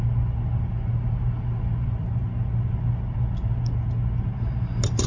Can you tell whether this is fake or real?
real